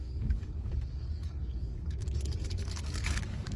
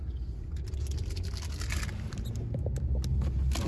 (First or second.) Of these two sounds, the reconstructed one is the first